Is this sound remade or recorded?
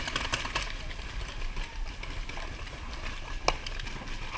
recorded